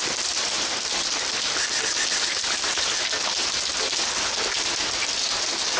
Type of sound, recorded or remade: recorded